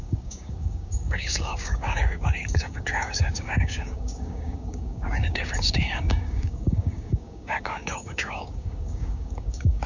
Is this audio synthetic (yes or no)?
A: yes